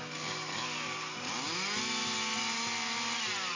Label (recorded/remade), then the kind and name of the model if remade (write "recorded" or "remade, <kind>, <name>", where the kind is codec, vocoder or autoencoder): recorded